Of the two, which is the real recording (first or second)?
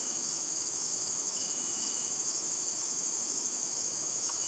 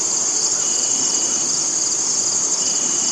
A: second